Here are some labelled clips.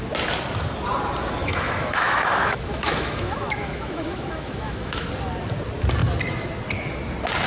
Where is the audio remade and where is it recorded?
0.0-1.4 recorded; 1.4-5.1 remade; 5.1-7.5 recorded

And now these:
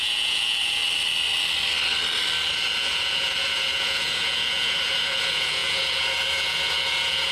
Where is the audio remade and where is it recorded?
0.0-0.8 remade; 0.8-2.5 recorded; 2.5-7.3 remade

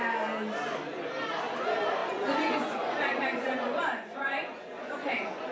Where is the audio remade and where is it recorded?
0.0-2.0 recorded; 2.0-5.5 remade

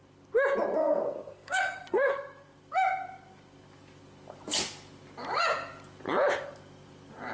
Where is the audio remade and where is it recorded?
0.0-0.8 recorded; 0.8-2.1 remade; 2.1-7.3 recorded

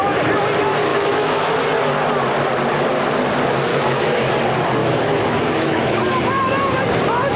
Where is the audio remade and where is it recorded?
0.0-0.9 recorded; 0.9-1.6 remade; 1.6-3.7 recorded; 3.7-4.3 remade; 4.3-4.8 recorded; 4.8-6.0 remade; 6.0-7.4 recorded

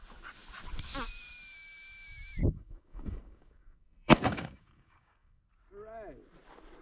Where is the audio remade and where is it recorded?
0.0-2.4 recorded; 2.4-5.4 remade; 5.4-6.8 recorded

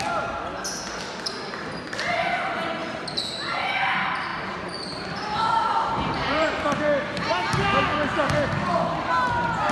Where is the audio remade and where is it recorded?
0.0-2.8 recorded; 2.8-3.7 remade; 3.7-4.3 recorded; 4.3-6.5 remade; 6.5-9.7 recorded

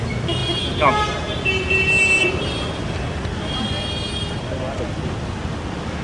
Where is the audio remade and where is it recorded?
0.0-6.0 recorded